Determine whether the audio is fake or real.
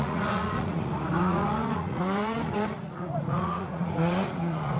fake